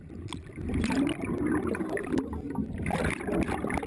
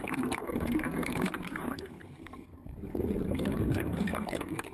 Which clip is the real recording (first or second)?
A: first